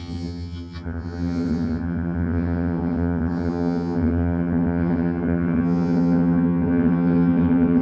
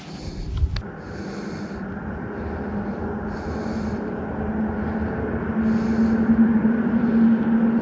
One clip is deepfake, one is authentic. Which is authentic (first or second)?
second